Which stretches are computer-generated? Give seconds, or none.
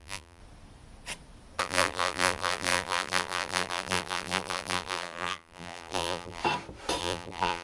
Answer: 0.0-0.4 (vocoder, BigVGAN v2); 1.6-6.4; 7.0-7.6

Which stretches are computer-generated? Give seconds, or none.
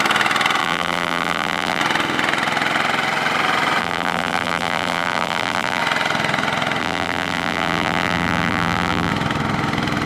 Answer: 0.6-1.8 (vocoder, BigVGAN v2); 3.8-5.8; 6.8-9.1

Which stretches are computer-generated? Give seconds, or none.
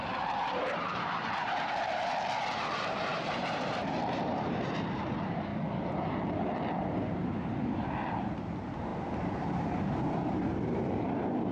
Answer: 0.0-5.5 (vocoder, BigVGAN v2); 8.2-11.5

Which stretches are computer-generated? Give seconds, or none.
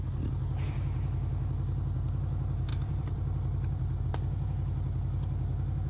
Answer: 2.7-4.0 (vocoder, BigVGAN v2)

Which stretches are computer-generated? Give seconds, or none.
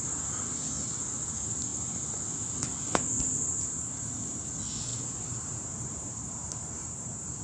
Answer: 4.9-7.4 (vocoder, BigVGAN v2)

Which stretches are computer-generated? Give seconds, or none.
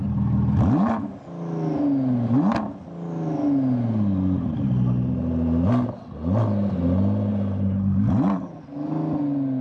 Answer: 7.3-8.6 (vocoder, BigVGAN v2)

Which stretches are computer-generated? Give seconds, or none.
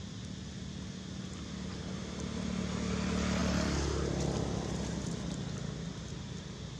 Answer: none